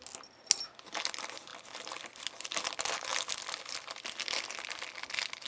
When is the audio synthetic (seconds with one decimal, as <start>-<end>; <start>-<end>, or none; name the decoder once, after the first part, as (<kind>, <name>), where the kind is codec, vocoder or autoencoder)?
none